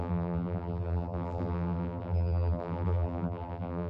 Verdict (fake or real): fake